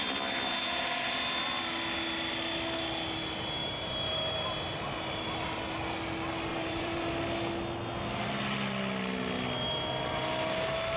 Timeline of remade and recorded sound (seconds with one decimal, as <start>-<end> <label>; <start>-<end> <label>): 0.0-0.5 remade; 0.5-3.6 recorded; 3.6-4.5 remade; 4.5-6.5 recorded; 6.5-7.1 remade; 7.1-11.0 recorded